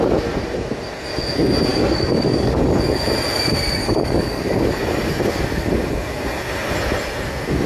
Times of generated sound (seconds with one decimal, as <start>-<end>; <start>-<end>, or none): 1.7-2.6; 3.8-4.7